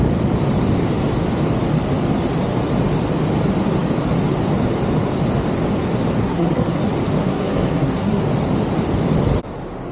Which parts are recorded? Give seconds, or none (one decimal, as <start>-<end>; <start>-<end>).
0.0-6.2; 6.8-7.2; 8.2-9.9